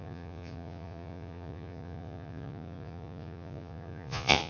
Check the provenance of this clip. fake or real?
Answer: fake